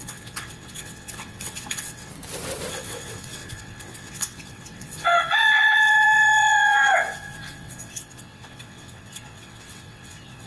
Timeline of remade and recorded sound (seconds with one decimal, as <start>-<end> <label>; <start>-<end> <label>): 0.0-2.1 remade; 2.1-2.7 recorded; 2.7-10.5 remade